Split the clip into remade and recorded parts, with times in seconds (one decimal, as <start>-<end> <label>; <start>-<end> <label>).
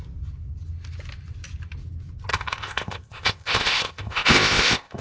0.0-2.3 recorded; 2.3-5.0 remade